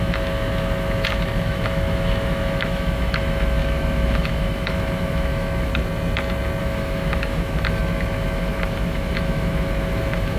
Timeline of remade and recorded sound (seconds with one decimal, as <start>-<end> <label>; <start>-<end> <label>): 0.0-5.7 remade; 5.7-6.6 recorded; 6.6-10.4 remade